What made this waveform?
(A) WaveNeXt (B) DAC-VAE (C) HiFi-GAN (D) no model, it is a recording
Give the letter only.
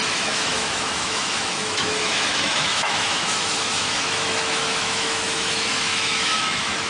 B